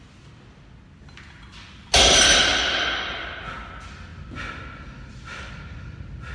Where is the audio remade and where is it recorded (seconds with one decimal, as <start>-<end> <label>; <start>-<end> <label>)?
0.0-6.3 recorded